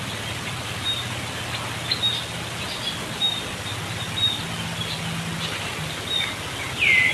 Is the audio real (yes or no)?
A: yes